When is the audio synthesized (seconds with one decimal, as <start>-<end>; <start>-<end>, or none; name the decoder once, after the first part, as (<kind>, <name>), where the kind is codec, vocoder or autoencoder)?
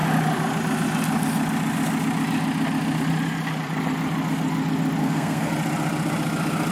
5.0-5.5 (codec, SNAC)